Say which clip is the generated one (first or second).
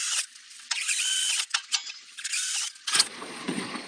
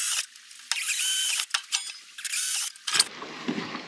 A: first